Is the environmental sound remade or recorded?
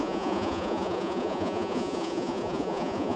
remade